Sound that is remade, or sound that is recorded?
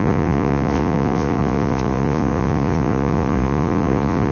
remade